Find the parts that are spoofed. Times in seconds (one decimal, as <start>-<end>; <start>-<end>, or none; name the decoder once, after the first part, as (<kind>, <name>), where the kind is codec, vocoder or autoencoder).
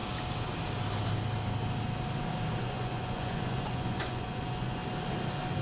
2.6-4.8 (vocoder, Vocos)